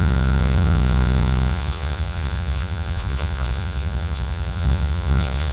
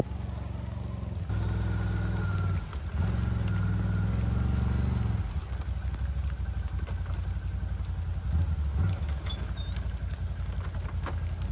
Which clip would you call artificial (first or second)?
first